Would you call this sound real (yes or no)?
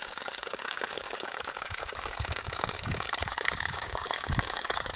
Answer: no